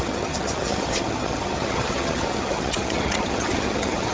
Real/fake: fake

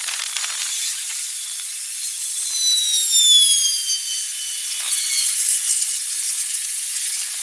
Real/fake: real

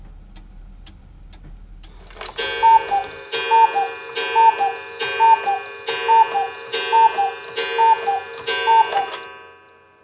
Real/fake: real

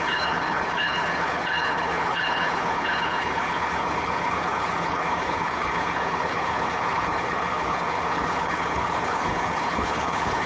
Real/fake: fake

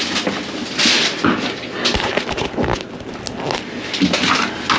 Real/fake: real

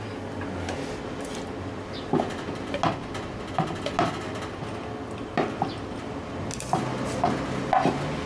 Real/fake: real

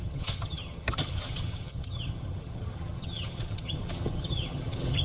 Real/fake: fake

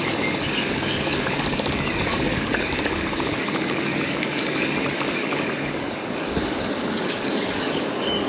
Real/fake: fake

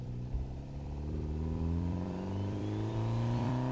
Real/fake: fake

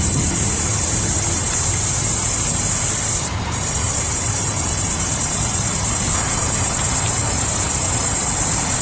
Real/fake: fake